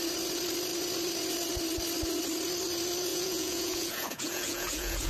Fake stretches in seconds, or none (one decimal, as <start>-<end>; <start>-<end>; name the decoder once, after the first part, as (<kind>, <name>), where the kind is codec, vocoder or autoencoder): 3.1-5.1 (vocoder, Vocos)